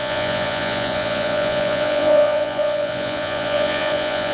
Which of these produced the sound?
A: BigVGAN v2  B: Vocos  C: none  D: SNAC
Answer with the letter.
B